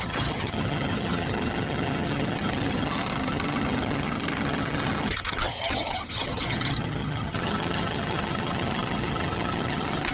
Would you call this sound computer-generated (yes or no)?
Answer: yes